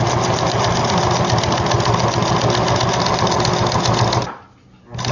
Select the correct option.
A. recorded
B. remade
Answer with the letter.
A